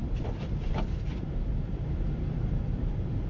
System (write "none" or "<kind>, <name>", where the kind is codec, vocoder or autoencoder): vocoder, BigVGAN v2